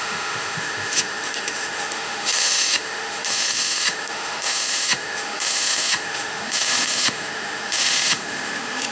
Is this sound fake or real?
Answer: fake